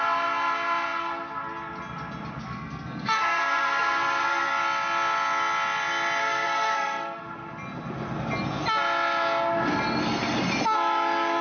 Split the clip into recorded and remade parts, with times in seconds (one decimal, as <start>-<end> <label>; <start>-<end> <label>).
0.0-2.4 recorded; 2.4-4.5 remade; 4.5-6.2 recorded; 6.2-7.2 remade; 7.2-11.4 recorded

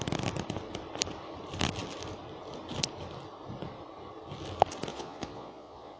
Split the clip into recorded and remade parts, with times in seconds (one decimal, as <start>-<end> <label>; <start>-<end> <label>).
0.0-4.9 recorded; 4.9-6.0 remade

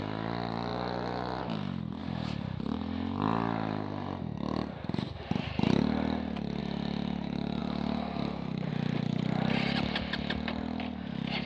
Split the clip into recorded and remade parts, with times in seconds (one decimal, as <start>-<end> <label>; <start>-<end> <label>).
0.0-11.5 recorded

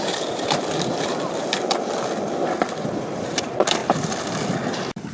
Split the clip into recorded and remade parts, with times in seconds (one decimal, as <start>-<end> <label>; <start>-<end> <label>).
0.0-3.8 remade; 3.8-5.1 recorded

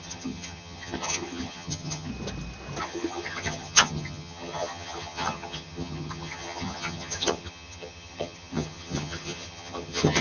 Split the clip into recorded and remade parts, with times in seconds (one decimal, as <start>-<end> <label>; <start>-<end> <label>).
0.0-2.1 remade; 2.1-2.8 recorded; 2.8-10.2 remade

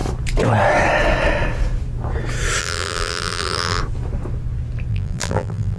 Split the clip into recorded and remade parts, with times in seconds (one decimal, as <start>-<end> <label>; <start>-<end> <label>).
0.0-2.6 recorded; 2.6-3.8 remade; 3.8-4.9 recorded; 4.9-5.8 remade